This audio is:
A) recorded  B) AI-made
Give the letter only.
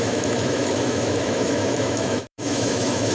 B